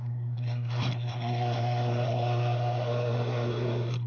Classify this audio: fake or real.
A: fake